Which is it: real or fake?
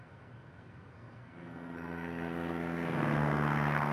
fake